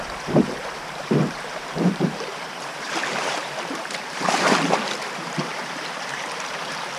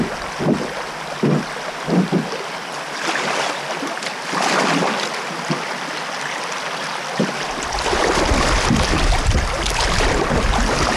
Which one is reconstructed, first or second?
first